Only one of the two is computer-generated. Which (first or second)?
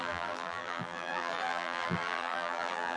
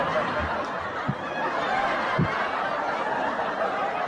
first